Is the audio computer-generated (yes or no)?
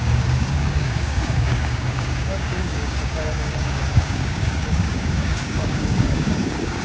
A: yes